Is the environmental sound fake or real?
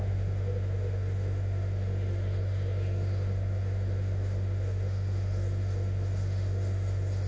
fake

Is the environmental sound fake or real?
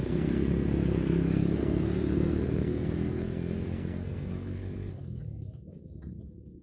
fake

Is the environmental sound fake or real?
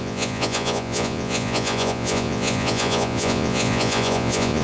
fake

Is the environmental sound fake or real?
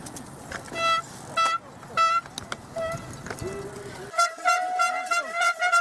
real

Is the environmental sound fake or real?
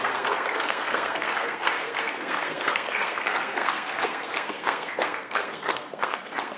fake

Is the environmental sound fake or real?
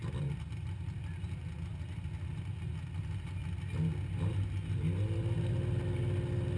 real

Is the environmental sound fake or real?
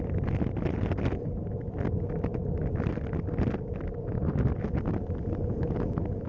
real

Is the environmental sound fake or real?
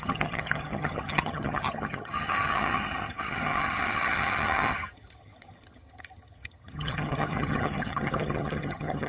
fake